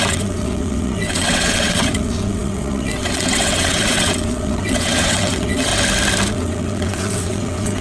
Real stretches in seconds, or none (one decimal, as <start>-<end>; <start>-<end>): 5.7-6.3